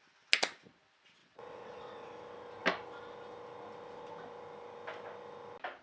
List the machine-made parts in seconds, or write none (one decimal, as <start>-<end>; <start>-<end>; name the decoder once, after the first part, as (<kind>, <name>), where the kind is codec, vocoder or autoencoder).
1.2-2.1 (vocoder, WaveNeXt)